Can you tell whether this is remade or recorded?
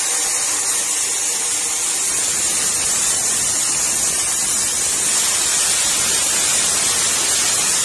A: recorded